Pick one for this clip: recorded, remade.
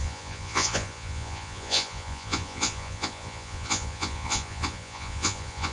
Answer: remade